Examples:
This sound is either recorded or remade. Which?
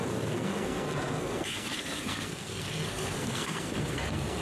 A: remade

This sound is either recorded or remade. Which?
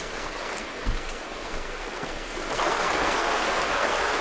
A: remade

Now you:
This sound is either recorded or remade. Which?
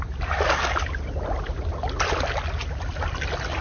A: recorded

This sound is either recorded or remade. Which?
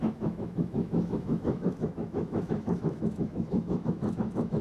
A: remade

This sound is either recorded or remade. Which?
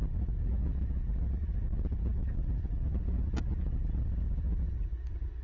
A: recorded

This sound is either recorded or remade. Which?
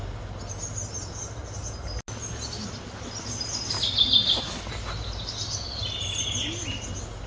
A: recorded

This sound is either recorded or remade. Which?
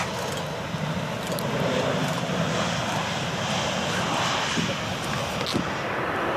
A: recorded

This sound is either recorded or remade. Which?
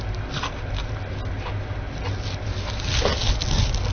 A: recorded